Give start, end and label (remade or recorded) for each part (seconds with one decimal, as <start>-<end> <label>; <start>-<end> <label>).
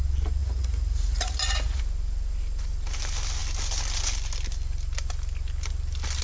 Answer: 0.0-0.4 recorded; 0.4-1.8 remade; 1.8-6.2 recorded